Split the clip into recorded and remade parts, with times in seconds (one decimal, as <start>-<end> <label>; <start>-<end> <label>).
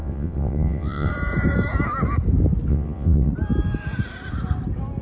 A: 0.0-1.1 remade; 1.1-2.7 recorded; 2.7-3.3 remade; 3.3-5.0 recorded